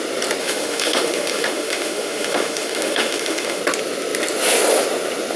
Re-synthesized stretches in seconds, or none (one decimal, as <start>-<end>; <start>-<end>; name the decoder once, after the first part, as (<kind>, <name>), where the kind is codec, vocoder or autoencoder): 0.4-3.6 (autoencoder, DAC-VAE)